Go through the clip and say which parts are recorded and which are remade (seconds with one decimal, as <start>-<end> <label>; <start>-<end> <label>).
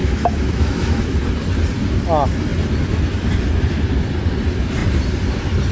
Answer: 0.0-1.1 remade; 1.1-5.7 recorded